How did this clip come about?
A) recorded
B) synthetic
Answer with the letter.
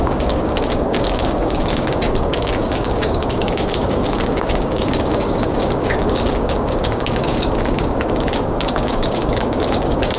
B